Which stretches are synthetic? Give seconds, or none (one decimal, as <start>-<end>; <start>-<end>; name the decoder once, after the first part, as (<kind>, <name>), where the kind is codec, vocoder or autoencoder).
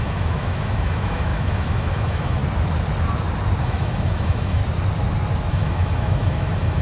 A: 0.0-2.4 (autoencoder, DAC-VAE); 3.6-4.6; 5.5-6.8